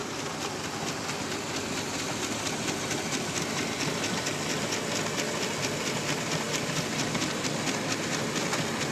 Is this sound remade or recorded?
recorded